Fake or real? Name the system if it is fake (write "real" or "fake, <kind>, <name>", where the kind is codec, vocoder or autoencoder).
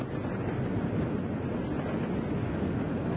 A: real